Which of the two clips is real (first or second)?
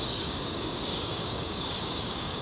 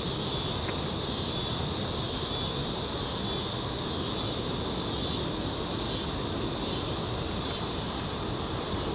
second